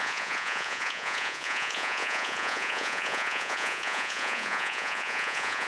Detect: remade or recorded remade